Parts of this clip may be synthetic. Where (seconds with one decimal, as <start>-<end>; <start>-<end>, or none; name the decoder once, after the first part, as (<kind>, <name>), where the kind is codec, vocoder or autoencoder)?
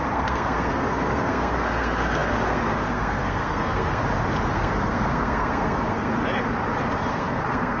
0.0-4.0 (codec, SNAC); 4.5-6.1; 7.1-7.8